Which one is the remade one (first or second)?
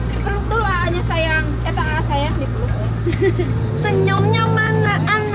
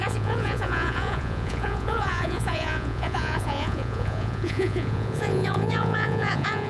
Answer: second